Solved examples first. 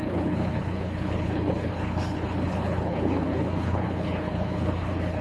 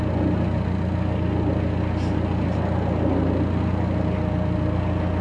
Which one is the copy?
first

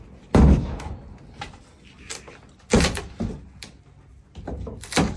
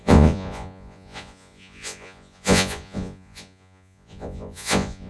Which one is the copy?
second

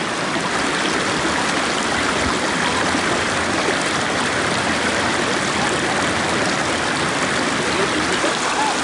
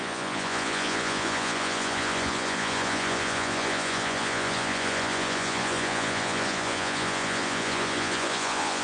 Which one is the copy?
second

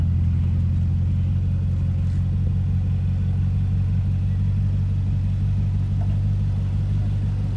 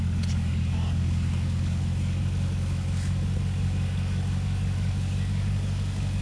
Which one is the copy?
second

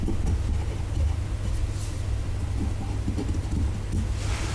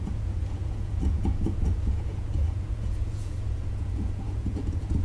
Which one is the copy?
second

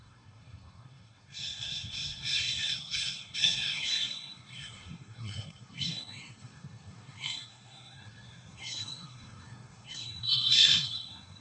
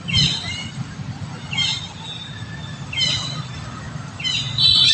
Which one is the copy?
first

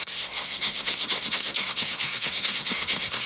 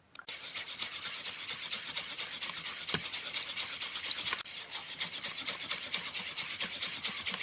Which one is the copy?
first